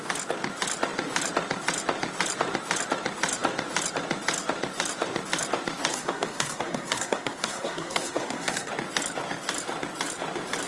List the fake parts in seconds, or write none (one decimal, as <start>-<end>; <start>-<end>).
5.9-8.7

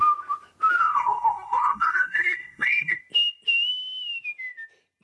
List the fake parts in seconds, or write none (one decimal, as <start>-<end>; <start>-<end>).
0.8-3.0

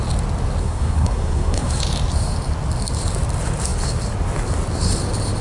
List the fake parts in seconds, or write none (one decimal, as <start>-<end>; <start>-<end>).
0.6-1.8

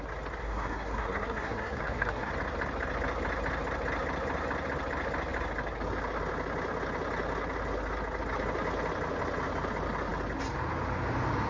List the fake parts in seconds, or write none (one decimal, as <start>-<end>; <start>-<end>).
0.4-2.3

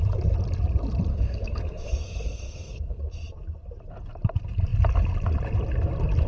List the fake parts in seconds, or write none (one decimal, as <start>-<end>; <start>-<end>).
1.1-3.0

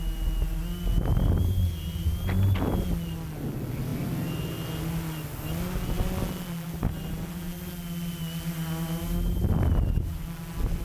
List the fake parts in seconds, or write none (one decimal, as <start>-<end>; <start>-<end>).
none

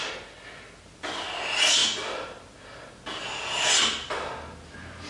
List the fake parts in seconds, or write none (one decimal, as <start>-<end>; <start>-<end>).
none

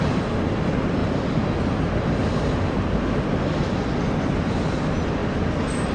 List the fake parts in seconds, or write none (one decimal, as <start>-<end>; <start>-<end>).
none